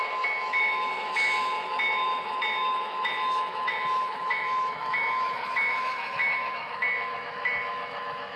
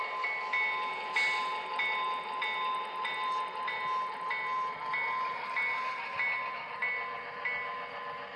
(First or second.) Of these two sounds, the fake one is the first